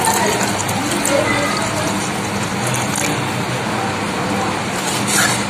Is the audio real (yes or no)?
yes